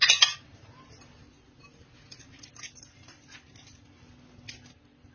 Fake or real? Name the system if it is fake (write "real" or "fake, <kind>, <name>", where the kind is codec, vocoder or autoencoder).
real